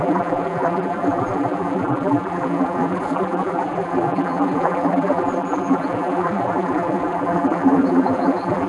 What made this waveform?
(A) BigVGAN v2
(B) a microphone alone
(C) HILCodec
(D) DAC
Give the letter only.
A